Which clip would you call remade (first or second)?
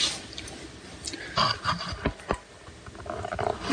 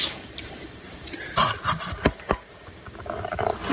second